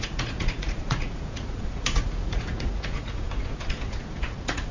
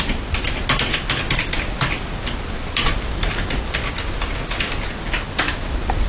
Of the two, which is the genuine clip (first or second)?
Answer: second